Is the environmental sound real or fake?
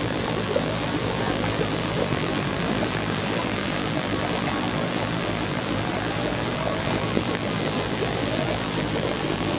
fake